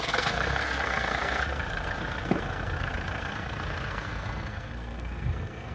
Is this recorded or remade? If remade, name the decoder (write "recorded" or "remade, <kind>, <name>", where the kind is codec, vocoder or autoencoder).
remade, codec, SNAC